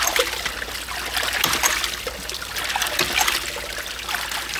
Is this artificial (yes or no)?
no